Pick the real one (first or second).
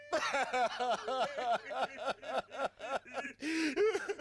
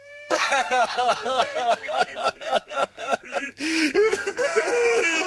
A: first